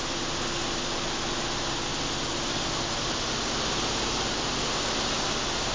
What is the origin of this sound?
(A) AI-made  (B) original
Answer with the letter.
B